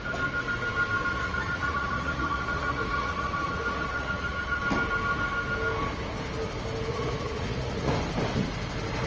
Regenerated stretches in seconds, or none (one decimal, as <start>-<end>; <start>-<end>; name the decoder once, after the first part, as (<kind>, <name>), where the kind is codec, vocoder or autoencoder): 1.1-4.6 (vocoder, Vocos); 6.9-7.9